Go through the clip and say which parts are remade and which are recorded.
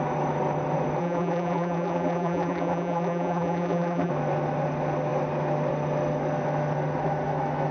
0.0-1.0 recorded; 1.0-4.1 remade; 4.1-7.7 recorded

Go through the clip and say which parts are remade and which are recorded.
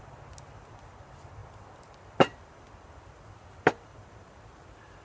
0.0-5.0 recorded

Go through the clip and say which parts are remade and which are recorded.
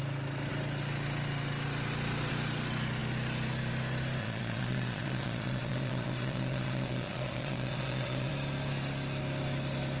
0.0-4.2 recorded; 4.2-8.3 remade; 8.3-10.0 recorded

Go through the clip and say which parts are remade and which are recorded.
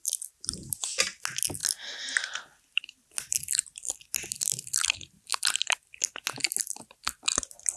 0.0-7.8 recorded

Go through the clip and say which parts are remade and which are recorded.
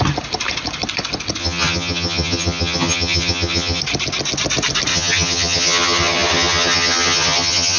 0.0-1.4 recorded; 1.4-3.8 remade; 3.8-4.9 recorded; 4.9-7.8 remade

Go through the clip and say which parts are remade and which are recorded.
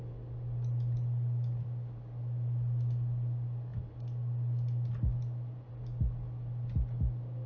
0.0-7.5 recorded